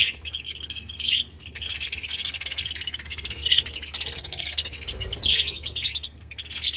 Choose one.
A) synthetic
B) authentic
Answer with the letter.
A